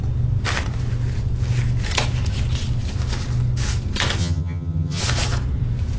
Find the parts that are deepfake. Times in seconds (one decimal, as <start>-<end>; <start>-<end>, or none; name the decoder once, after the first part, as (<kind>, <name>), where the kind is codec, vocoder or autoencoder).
4.2-5.0 (vocoder, HiFi-GAN)